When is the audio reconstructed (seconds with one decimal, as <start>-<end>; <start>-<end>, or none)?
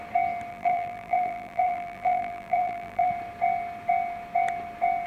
0.5-3.1